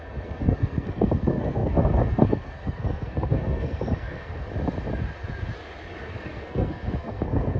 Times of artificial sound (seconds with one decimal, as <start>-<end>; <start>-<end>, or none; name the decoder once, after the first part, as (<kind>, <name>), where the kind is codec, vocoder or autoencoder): 0.0-4.5 (codec, SNAC); 6.0-7.6